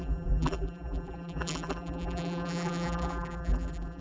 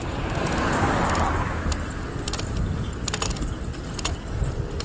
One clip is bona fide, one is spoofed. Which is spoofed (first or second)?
first